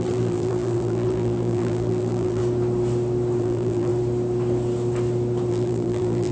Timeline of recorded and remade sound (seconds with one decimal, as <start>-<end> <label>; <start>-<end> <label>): 0.0-2.4 remade; 2.4-3.4 recorded; 3.4-3.9 remade; 3.9-5.5 recorded; 5.5-6.3 remade